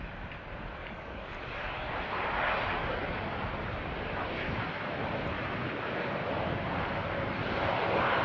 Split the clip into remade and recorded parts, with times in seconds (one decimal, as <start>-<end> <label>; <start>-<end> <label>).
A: 0.0-0.8 recorded; 0.8-1.9 remade; 1.9-2.8 recorded; 2.8-3.4 remade; 3.4-8.2 recorded